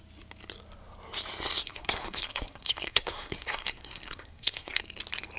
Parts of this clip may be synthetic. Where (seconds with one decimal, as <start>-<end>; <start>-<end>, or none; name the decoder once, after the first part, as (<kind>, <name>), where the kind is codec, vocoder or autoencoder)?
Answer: 1.6-4.8 (codec, SNAC)